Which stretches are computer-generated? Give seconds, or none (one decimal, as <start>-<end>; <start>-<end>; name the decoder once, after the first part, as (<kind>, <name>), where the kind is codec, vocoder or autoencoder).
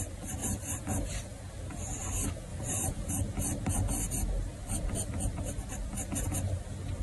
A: 0.4-1.4 (vocoder, BigVGAN v2); 2.5-3.1